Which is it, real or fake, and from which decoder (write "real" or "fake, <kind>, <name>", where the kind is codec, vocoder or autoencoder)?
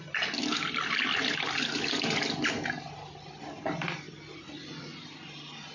real